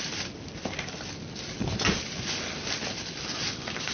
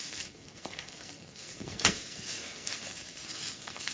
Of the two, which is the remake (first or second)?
second